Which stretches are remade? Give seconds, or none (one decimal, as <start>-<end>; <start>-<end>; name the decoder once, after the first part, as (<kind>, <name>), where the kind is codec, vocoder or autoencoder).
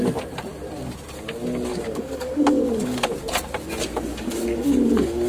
1.7-3.0 (codec, DAC); 4.1-5.3